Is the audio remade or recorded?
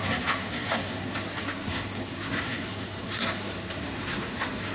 remade